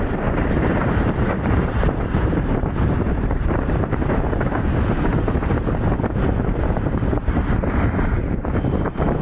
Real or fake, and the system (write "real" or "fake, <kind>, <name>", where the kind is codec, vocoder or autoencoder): fake, vocoder, BigVGAN v2